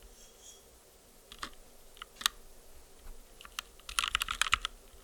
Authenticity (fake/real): real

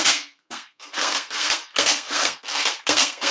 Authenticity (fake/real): fake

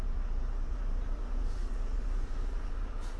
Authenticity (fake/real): fake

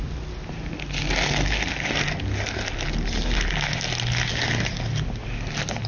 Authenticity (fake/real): real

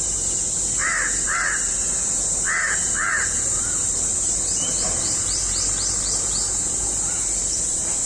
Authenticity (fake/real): fake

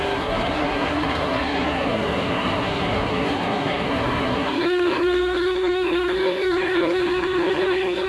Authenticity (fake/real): fake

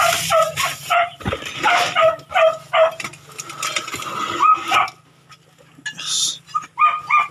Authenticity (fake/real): real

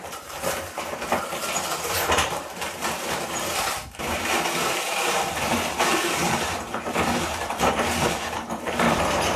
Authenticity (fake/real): fake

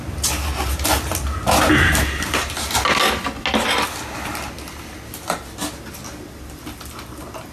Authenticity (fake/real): real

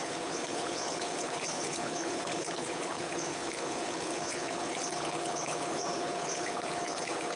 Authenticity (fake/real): fake